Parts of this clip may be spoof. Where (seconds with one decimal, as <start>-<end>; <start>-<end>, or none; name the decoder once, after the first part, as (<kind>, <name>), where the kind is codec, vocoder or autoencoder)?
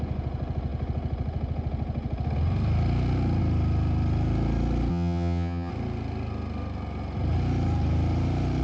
4.9-5.7 (vocoder, HiFi-GAN)